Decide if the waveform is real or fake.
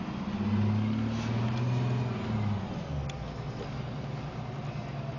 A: real